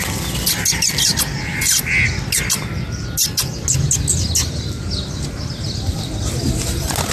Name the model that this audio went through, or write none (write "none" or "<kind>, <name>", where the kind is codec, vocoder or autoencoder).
none